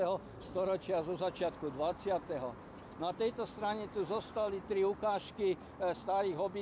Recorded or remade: recorded